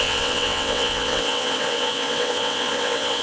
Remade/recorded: remade